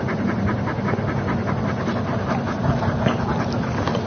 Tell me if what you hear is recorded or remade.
recorded